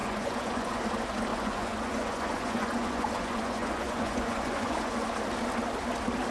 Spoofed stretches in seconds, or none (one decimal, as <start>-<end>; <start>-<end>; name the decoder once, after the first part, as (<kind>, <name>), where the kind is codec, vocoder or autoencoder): 0.0-0.8 (vocoder, Vocos); 1.3-5.1